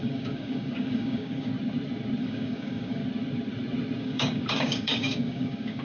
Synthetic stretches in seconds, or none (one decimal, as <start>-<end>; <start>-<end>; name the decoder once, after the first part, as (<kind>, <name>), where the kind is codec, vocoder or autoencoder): 0.0-1.5 (codec, DAC); 2.2-3.0; 4.0-5.8